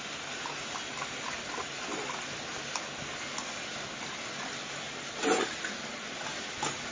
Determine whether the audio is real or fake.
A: real